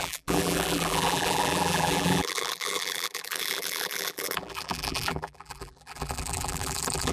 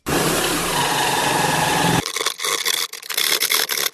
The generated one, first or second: first